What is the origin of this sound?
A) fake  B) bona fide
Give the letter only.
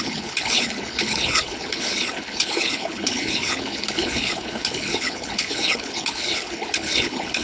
A